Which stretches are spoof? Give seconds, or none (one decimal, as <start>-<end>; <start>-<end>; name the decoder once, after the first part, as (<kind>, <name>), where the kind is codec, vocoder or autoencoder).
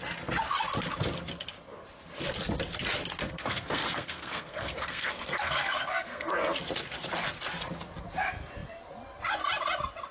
3.2-6.3 (codec, SNAC)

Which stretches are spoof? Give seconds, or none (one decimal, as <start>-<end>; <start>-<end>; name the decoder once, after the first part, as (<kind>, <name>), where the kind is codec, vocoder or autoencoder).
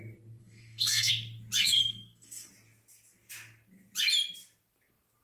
0.4-1.1 (codec, SNAC); 1.6-2.5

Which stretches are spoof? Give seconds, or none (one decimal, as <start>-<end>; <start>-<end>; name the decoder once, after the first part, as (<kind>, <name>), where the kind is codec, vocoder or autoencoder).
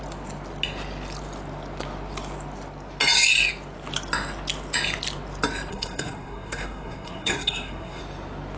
5.7-8.0 (codec, SNAC)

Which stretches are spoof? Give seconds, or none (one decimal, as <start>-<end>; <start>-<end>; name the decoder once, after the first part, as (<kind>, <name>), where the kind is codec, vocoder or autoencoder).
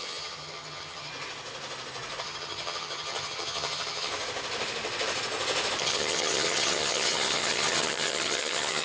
0.0-1.1 (vocoder, HiFi-GAN); 2.2-4.1; 5.8-8.8